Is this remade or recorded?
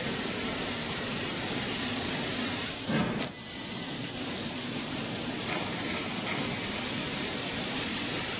remade